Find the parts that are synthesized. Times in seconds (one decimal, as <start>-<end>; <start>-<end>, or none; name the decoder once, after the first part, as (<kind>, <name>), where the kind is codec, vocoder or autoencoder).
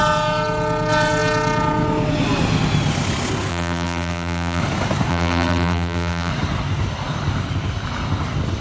3.5-4.6 (vocoder, BigVGAN v2); 5.1-6.3